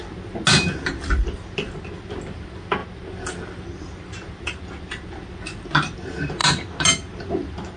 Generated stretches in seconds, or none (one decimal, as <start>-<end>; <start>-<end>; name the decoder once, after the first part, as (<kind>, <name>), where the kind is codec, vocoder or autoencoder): none